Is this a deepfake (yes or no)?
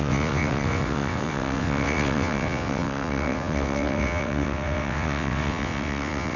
yes